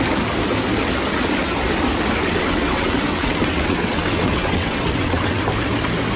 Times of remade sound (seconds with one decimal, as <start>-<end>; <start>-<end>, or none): 2.2-5.4